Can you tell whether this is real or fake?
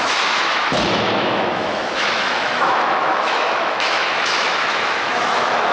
fake